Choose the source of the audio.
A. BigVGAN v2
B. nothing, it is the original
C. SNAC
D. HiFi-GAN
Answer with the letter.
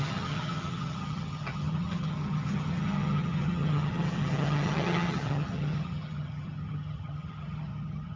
D